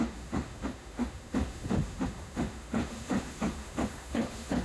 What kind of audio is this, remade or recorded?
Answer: remade